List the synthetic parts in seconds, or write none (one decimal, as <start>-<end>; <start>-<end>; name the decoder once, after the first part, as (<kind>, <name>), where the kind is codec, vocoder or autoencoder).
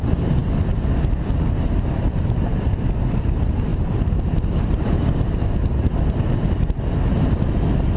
none